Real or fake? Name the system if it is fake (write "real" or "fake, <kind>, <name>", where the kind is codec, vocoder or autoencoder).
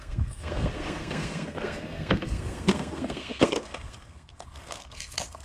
fake, codec, SNAC